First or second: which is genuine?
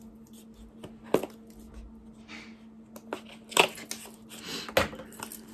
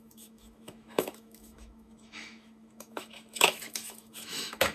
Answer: first